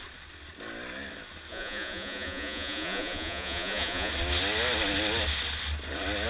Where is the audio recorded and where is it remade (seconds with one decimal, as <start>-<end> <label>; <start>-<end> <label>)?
0.0-1.5 recorded; 1.5-4.1 remade; 4.1-6.3 recorded